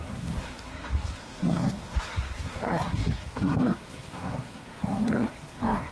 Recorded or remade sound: remade